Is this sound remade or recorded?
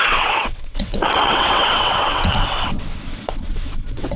remade